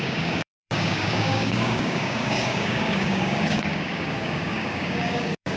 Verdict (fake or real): fake